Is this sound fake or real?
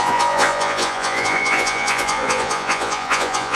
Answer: fake